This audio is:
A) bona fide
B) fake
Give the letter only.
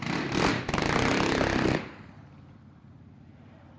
A